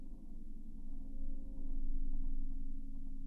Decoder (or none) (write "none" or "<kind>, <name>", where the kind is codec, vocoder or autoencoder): none